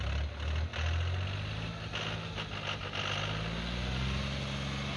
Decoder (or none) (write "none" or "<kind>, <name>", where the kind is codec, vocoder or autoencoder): none